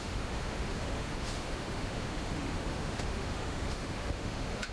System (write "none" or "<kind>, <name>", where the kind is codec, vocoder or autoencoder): autoencoder, DAC-VAE